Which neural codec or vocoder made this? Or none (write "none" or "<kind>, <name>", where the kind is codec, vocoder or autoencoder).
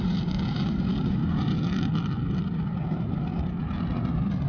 vocoder, BigVGAN v2